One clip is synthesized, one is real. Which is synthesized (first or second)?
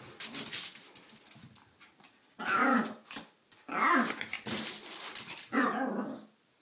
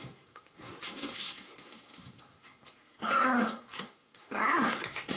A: second